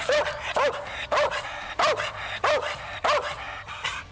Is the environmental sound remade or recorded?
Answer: recorded